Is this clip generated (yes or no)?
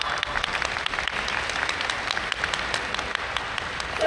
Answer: no